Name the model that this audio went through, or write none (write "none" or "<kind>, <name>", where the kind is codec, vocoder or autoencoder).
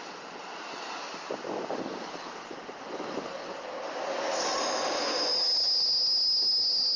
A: none